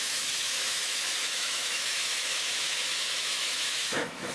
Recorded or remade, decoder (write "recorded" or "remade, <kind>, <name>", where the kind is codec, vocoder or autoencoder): remade, autoencoder, DAC-VAE